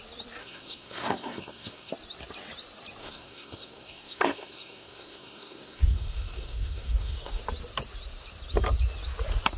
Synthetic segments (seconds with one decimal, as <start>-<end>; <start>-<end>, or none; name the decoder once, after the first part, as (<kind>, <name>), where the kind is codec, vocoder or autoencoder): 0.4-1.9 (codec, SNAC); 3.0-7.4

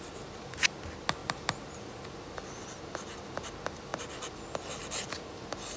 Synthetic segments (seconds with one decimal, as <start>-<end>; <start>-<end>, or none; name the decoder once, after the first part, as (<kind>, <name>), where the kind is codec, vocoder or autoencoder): none

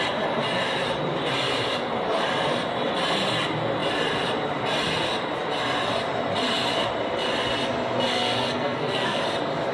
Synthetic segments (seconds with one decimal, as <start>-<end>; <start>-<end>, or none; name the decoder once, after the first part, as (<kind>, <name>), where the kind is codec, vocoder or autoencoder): 8.1-9.2 (codec, SNAC)

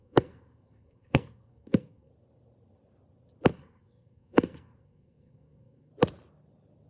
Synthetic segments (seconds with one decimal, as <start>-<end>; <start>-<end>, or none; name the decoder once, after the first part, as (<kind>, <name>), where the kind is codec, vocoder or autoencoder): 0.0-2.1 (codec, SNAC); 3.5-5.9